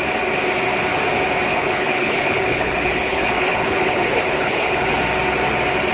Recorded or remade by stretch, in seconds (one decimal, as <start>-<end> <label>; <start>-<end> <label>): 0.0-1.5 recorded; 1.5-5.0 remade; 5.0-5.9 recorded

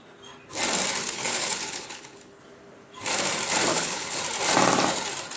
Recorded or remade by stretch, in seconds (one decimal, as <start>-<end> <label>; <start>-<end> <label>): 0.0-1.0 recorded; 1.0-2.4 remade; 2.4-3.7 recorded; 3.7-4.2 remade; 4.2-5.4 recorded

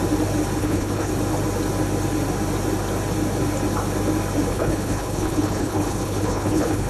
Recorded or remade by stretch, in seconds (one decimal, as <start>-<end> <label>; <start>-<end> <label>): 0.0-0.6 recorded; 0.6-1.1 remade; 1.1-4.5 recorded; 4.5-6.9 remade

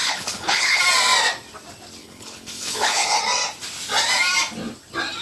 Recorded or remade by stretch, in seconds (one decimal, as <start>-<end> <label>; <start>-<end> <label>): 0.0-0.8 remade; 0.8-2.0 recorded; 2.0-3.2 remade; 3.2-5.2 recorded

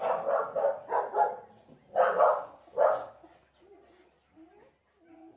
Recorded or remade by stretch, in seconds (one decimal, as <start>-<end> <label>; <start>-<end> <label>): 0.0-5.4 recorded

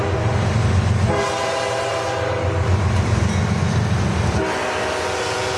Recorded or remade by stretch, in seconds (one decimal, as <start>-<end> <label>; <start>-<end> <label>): 0.0-5.6 recorded

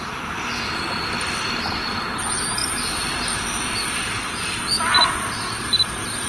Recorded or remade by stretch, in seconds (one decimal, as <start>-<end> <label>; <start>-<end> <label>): 0.0-6.3 recorded

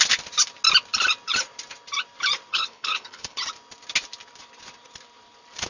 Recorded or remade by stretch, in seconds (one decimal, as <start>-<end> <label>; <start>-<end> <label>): 0.0-2.5 recorded; 2.5-3.4 remade; 3.4-5.7 recorded